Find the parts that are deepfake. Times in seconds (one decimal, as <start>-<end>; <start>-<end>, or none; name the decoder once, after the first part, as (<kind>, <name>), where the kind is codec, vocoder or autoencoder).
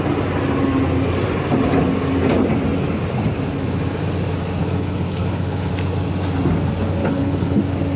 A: 4.6-5.7 (codec, HILCodec); 7.0-7.6